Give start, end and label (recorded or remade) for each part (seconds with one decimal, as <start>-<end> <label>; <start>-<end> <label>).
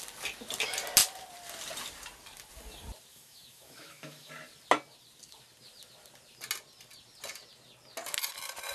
0.0-3.1 recorded; 3.1-4.3 remade; 4.3-8.7 recorded